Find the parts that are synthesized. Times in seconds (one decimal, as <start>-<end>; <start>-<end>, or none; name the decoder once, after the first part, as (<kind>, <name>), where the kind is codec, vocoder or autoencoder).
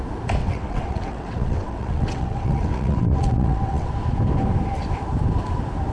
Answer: 0.4-3.9 (vocoder, WaveNeXt)